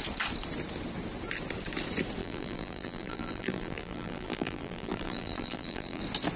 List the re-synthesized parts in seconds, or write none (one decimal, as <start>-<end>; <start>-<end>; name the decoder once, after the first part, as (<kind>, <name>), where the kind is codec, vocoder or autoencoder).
2.2-6.0 (vocoder, BigVGAN v2)